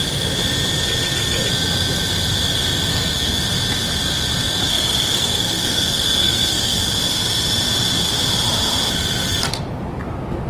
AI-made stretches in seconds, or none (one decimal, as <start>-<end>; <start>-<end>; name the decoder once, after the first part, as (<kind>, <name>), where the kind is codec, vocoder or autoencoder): 2.9-3.4 (codec, SNAC); 5.1-7.0